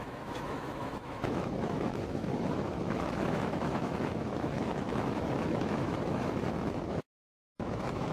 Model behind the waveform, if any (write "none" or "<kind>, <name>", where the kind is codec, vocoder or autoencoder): autoencoder, DAC-VAE